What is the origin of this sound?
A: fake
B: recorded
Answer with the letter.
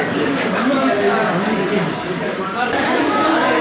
A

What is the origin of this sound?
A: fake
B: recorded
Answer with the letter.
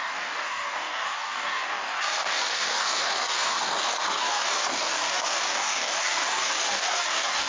A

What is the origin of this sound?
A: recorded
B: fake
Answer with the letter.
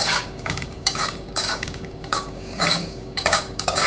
B